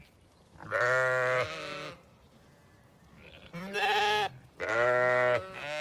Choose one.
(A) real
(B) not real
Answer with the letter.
A